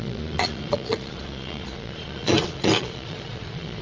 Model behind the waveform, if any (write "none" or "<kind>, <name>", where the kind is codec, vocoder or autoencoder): vocoder, Vocos